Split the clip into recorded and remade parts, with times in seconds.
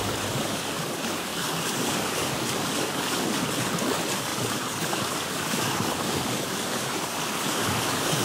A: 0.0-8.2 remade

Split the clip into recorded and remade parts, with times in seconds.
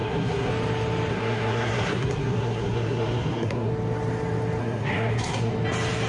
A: 0.0-0.5 remade; 0.5-1.1 recorded; 1.1-3.7 remade; 3.7-4.6 recorded; 4.6-5.5 remade; 5.5-6.1 recorded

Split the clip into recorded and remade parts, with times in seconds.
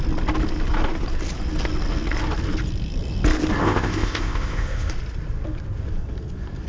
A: 0.0-3.6 recorded; 3.6-4.9 remade; 4.9-6.7 recorded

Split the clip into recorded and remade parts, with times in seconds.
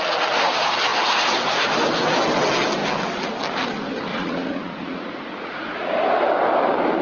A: 0.0-4.1 recorded; 4.1-5.9 remade; 5.9-7.0 recorded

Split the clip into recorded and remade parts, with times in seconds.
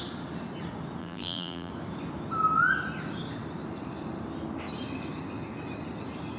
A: 0.0-1.0 recorded; 1.0-1.7 remade; 1.7-6.4 recorded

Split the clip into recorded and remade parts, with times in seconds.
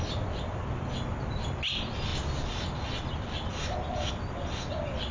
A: 0.0-5.1 recorded